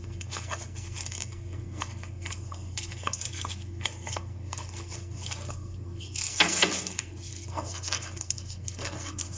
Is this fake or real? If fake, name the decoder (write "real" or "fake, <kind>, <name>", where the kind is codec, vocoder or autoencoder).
fake, codec, SNAC